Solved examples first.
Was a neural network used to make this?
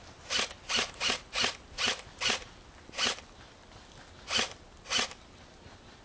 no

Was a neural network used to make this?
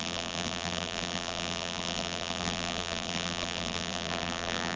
yes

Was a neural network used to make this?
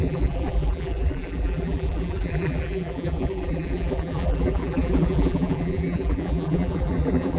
yes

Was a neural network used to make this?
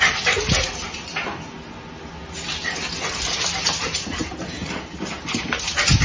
no